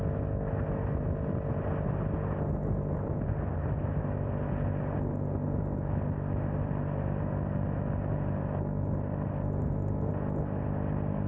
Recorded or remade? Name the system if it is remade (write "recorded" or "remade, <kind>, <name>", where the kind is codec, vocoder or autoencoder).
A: recorded